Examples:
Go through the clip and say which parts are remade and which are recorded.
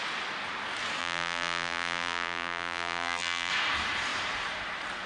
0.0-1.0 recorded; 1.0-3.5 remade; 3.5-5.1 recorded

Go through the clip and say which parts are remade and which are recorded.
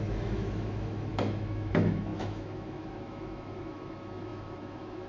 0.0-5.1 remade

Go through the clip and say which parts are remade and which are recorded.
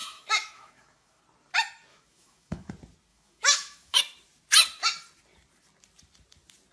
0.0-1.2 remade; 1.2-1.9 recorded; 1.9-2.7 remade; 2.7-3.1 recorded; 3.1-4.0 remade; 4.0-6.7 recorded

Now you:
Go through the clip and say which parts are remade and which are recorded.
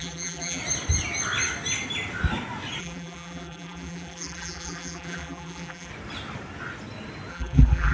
0.0-0.6 remade; 0.6-2.8 recorded; 2.8-5.9 remade; 5.9-7.3 recorded; 7.3-7.9 remade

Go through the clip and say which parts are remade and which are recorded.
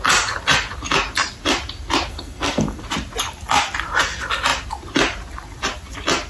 0.0-2.1 recorded; 2.1-2.8 remade; 2.8-6.3 recorded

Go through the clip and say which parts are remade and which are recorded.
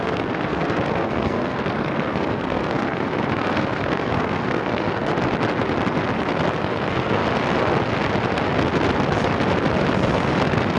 0.0-5.1 remade; 5.1-6.6 recorded; 6.6-7.2 remade; 7.2-10.8 recorded